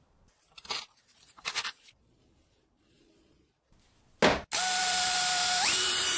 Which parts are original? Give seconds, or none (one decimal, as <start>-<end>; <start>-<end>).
3.0-4.8